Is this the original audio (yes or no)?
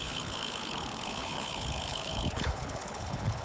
no